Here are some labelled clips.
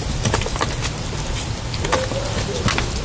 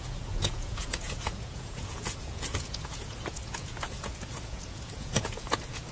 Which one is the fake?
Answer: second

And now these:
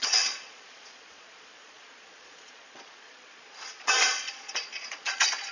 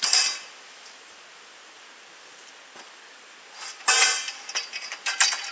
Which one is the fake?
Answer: first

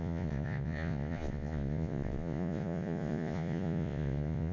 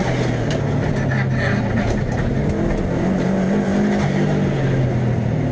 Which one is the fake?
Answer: first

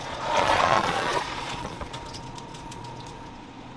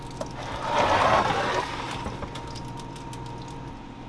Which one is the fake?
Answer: first